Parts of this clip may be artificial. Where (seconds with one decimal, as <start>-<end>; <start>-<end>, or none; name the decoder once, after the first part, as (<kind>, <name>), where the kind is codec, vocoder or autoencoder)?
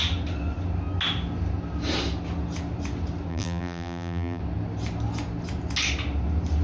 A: 3.3-4.4 (vocoder, BigVGAN v2)